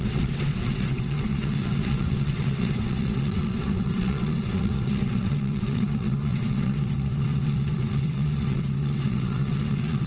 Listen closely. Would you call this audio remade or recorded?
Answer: remade